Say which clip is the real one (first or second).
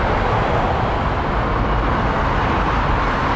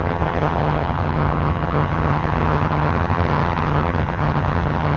first